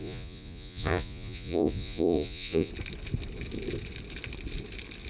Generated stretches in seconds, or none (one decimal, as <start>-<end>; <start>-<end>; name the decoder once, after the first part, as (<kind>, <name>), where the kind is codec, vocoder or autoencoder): 0.0-2.7 (vocoder, Vocos)